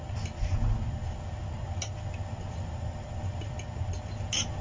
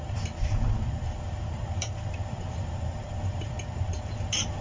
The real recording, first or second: first